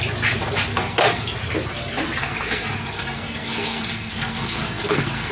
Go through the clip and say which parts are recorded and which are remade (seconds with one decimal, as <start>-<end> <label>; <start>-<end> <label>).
0.0-0.7 recorded; 0.7-1.4 remade; 1.4-2.2 recorded; 2.2-5.3 remade